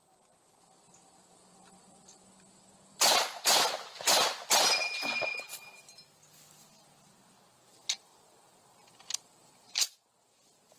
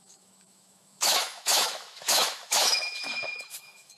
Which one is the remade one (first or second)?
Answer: second